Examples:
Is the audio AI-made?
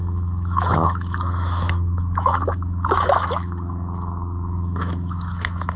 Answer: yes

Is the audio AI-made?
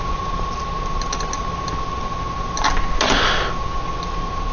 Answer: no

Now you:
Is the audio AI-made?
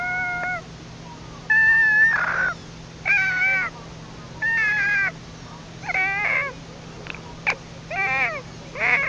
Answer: no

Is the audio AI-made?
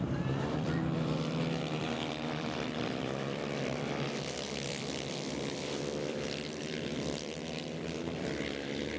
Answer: yes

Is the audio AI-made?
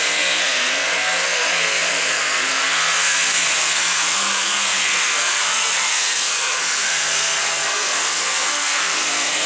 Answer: yes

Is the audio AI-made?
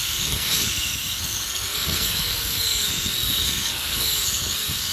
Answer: yes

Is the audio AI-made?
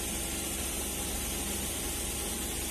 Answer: no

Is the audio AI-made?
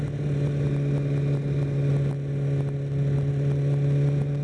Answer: no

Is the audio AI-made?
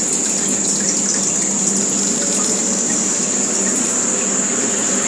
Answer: no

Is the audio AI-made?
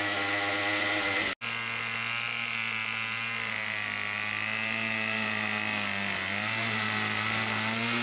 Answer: no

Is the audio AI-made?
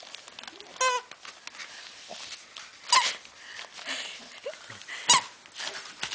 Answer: no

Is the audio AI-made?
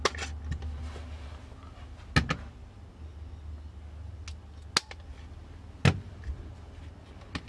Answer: no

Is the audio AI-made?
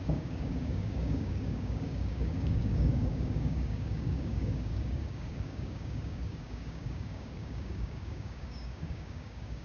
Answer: yes